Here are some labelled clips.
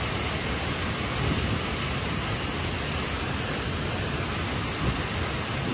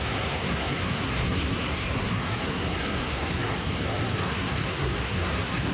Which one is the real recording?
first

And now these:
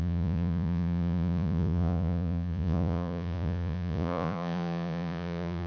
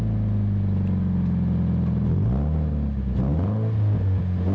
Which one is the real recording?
second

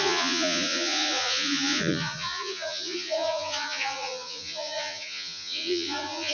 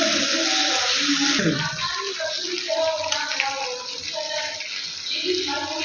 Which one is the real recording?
second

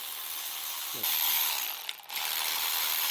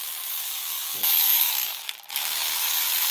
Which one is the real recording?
first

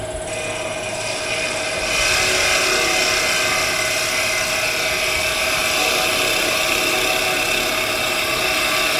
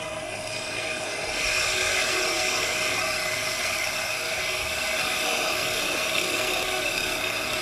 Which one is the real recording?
first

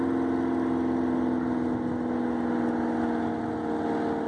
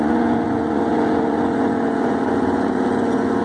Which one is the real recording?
first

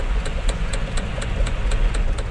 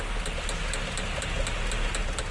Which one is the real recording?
second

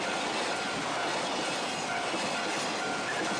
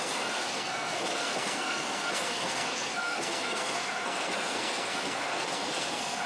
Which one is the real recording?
first